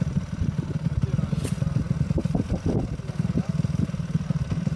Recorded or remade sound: recorded